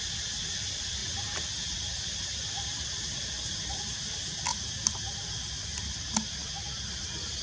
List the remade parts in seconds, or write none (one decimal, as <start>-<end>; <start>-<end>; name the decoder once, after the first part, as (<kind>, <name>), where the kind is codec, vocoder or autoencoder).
none